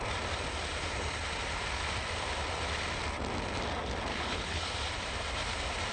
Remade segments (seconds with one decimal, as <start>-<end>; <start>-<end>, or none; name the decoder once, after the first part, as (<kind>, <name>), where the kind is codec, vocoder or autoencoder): 4.1-4.7 (codec, HILCodec)